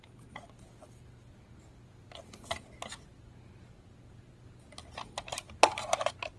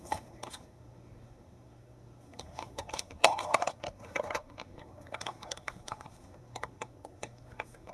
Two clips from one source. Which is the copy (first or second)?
second